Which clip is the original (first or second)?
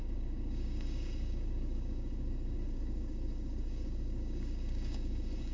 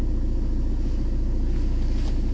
second